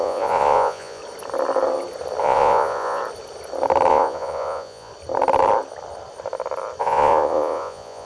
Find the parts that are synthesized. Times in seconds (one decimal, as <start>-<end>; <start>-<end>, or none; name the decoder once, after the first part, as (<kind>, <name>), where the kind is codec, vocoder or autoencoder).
0.0-1.0 (vocoder, Vocos); 2.2-3.0; 3.9-4.9; 6.8-8.1